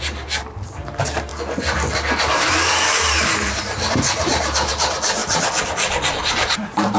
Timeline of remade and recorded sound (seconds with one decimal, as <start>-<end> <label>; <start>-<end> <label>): 0.0-1.3 remade; 1.3-2.2 recorded; 2.2-5.2 remade; 5.2-6.1 recorded; 6.1-7.0 remade